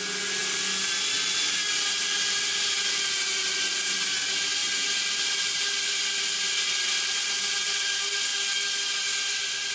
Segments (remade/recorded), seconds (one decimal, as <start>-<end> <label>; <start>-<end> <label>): 0.0-9.7 recorded